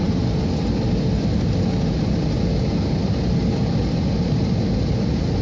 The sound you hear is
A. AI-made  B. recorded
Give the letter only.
B